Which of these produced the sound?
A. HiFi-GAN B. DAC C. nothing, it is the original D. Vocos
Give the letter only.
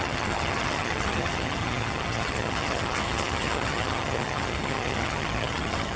A